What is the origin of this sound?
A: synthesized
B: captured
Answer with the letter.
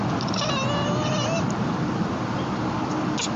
B